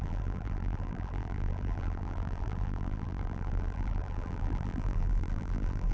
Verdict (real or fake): fake